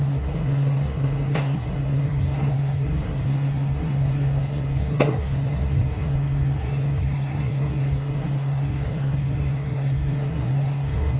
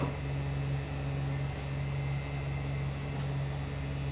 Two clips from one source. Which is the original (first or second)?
second